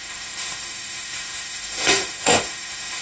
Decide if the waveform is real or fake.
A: fake